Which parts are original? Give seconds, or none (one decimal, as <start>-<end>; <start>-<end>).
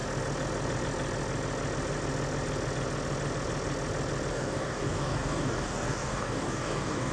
0.0-4.3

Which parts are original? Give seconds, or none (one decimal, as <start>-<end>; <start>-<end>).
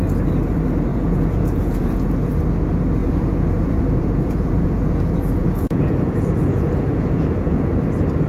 0.0-0.9; 2.3-3.0; 7.7-8.3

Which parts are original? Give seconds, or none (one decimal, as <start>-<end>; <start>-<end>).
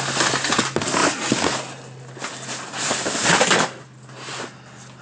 0.0-5.0